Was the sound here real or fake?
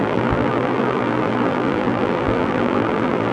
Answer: fake